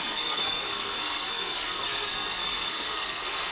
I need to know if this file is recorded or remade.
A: remade